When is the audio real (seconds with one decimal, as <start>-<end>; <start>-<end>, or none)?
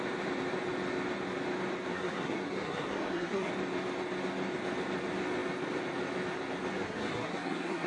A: 0.0-1.9; 3.5-6.8